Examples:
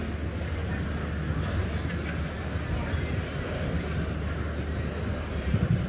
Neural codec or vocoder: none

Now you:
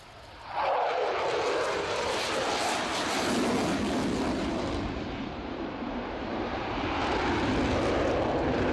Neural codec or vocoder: none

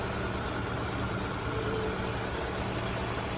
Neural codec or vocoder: none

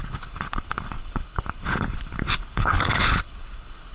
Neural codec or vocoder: codec, HILCodec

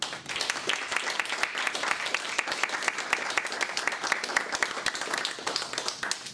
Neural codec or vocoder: none